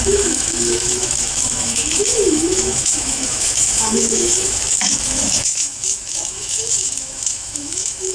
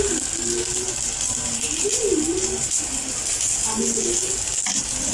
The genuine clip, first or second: second